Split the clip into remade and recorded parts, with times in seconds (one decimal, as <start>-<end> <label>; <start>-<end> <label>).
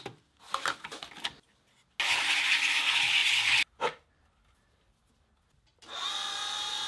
0.0-6.9 recorded